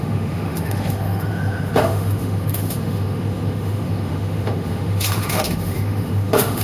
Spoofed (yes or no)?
yes